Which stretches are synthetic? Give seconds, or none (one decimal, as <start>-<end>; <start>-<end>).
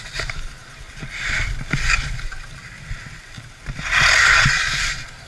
none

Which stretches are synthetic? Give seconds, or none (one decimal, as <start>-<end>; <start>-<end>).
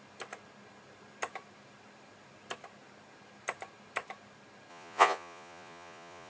4.7-6.3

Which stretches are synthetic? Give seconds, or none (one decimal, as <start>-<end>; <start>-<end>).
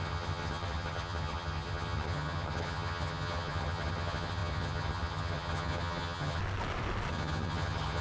0.0-6.4; 7.1-8.0